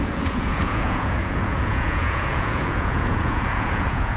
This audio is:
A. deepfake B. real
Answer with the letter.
A